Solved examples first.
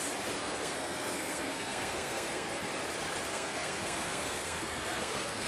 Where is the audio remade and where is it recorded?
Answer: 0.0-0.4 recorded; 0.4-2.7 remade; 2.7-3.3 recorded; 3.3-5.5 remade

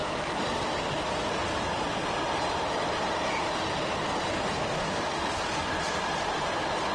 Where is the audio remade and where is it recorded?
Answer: 0.0-0.8 remade; 0.8-1.4 recorded; 1.4-4.2 remade; 4.2-6.9 recorded